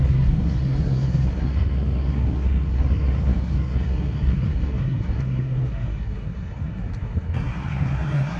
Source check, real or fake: fake